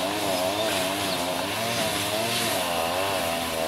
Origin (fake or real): real